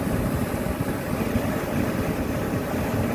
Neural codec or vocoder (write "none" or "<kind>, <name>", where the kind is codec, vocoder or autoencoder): none